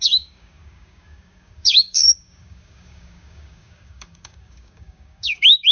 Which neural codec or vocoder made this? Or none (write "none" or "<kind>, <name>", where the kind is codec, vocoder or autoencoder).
codec, DAC